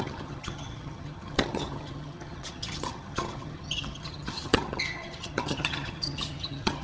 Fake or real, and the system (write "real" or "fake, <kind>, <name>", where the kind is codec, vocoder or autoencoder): fake, vocoder, HiFi-GAN